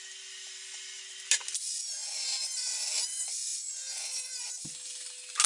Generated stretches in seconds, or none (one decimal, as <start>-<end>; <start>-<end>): none